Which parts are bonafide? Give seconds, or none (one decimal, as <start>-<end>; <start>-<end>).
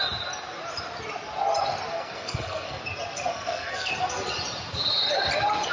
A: 0.0-1.9; 2.8-3.3; 3.9-5.7